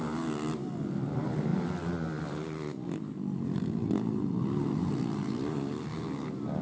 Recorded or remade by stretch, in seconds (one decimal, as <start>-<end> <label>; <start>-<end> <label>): 0.0-6.6 recorded